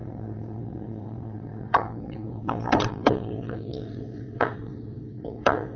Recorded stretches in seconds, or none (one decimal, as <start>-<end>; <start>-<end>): none